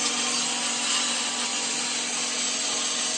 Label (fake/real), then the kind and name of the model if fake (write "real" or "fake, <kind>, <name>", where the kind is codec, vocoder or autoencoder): real